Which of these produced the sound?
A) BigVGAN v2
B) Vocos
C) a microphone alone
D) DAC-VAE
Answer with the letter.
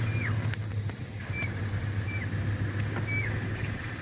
C